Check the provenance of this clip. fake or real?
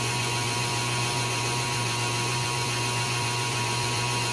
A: fake